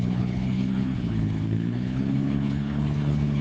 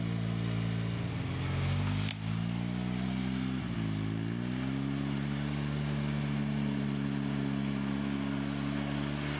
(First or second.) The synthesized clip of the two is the first